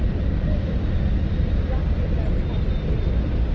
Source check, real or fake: real